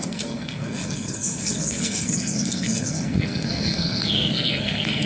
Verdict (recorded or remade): remade